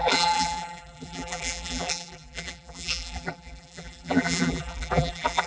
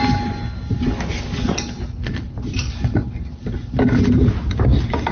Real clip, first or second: second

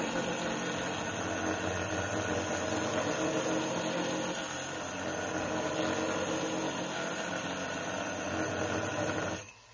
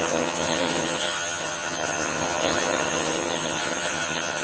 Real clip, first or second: first